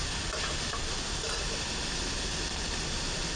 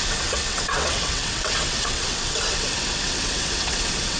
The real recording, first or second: first